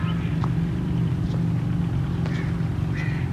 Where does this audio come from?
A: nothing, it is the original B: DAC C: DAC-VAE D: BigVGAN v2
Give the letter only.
A